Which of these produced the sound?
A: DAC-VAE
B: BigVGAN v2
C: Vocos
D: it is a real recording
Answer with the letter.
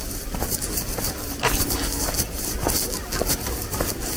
D